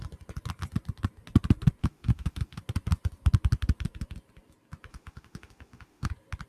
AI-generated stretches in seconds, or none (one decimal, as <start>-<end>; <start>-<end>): 1.8-2.6; 4.9-6.1